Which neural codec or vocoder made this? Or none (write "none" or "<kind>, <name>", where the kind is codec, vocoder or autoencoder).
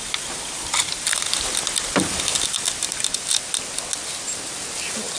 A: none